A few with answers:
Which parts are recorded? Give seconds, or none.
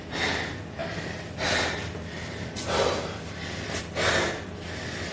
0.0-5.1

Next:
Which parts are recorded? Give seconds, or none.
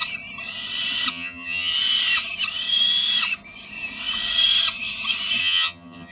0.0-1.1; 1.7-5.4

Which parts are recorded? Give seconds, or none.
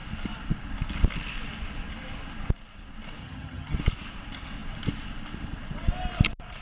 0.0-3.2; 3.8-6.6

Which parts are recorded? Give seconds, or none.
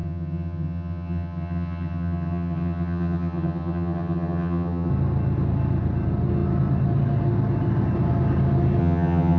4.9-8.8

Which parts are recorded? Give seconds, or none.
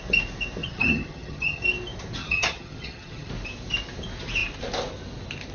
0.0-0.6; 1.6-2.2; 3.3-5.5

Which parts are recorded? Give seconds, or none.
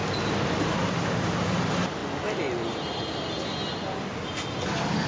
0.0-5.1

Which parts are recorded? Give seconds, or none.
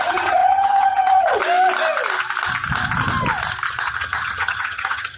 1.4-3.9